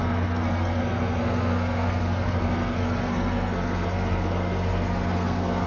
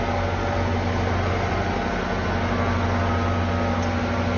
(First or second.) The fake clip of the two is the first